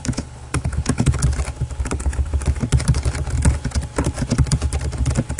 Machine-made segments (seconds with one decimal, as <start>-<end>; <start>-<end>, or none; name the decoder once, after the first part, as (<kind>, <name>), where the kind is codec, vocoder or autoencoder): 0.0-1.2 (codec, HILCodec); 1.8-2.3